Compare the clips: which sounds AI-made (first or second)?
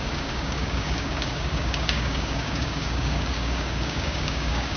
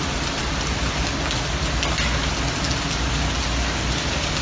first